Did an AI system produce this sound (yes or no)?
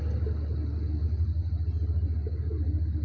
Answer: no